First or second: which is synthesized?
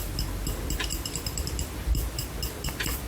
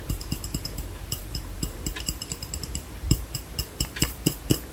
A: second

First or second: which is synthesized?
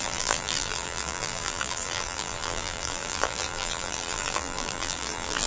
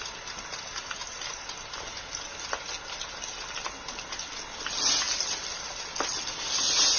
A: first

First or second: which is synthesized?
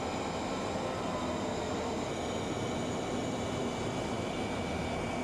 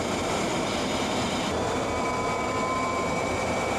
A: second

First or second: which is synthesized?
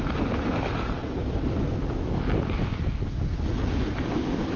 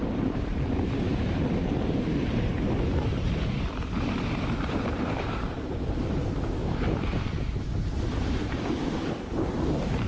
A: second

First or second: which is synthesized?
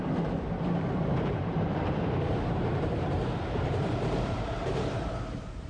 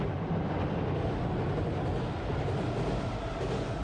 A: first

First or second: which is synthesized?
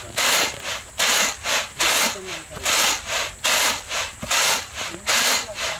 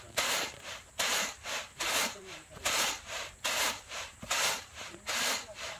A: second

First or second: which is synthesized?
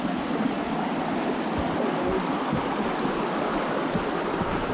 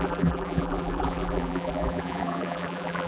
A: second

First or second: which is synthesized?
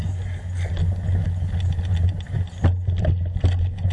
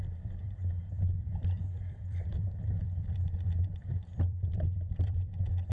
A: second